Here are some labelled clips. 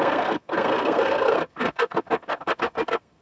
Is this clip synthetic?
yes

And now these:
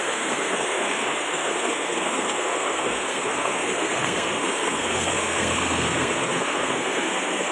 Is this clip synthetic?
yes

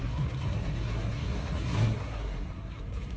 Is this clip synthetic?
yes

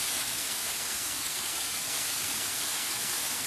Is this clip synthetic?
yes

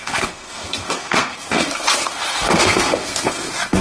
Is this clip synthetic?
yes